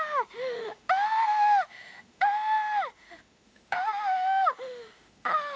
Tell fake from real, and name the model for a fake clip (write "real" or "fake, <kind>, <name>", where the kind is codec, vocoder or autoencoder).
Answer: fake, autoencoder, DAC-VAE